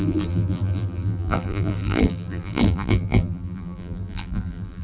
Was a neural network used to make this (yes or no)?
yes